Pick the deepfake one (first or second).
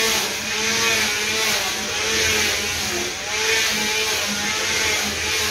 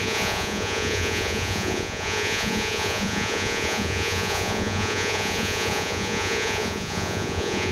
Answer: second